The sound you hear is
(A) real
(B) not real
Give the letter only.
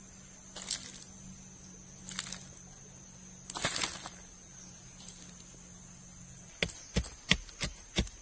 A